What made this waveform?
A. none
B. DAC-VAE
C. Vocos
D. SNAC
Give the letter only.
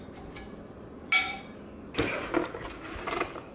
A